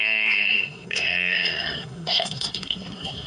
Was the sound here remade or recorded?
remade